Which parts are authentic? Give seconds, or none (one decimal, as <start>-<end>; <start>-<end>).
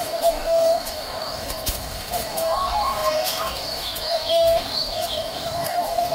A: none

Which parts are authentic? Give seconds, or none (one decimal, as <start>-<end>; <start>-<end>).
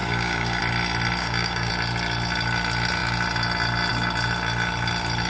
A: 0.6-1.2; 1.7-5.3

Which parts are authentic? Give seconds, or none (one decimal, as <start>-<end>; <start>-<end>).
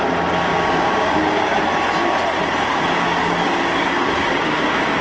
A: 0.0-0.5; 1.6-2.7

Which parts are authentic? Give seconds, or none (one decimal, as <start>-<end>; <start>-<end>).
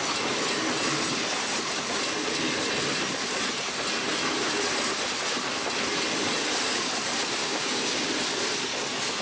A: 0.0-7.4; 8.1-9.2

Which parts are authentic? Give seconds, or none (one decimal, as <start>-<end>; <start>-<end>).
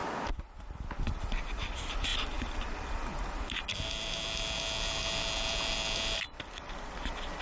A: 0.0-7.4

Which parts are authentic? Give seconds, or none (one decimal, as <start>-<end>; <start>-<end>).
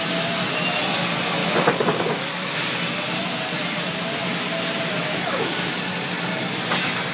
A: 0.0-1.4; 2.6-5.0; 5.8-7.1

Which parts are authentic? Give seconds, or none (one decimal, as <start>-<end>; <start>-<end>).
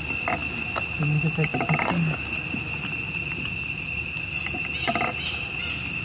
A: 0.0-6.0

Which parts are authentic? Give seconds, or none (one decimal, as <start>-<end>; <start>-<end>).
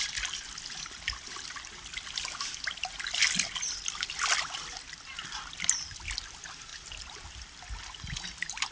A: 0.0-8.7